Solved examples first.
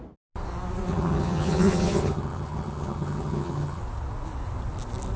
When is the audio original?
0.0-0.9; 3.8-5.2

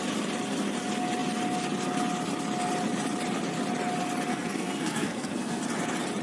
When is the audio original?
0.0-4.3; 5.6-6.2

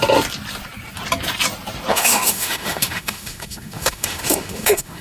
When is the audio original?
0.0-1.9